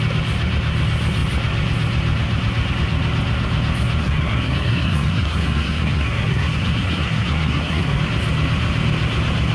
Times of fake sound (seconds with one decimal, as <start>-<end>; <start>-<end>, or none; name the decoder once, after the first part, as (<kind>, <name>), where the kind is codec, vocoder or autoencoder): 4.0-8.0 (codec, SNAC)